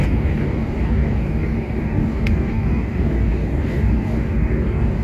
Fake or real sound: fake